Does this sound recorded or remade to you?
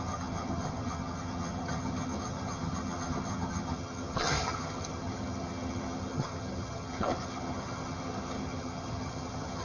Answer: remade